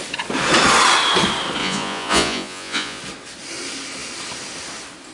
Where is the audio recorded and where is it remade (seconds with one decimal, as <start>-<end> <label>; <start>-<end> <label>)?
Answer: 0.0-1.6 recorded; 1.6-3.0 remade; 3.0-5.1 recorded